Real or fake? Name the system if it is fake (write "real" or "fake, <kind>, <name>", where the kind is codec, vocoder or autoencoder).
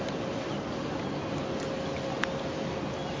real